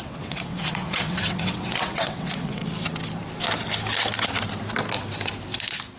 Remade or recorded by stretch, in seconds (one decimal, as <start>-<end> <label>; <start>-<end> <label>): 0.0-2.6 remade; 2.6-6.0 recorded